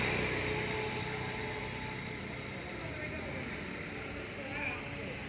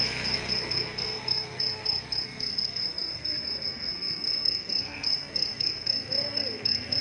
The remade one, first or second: second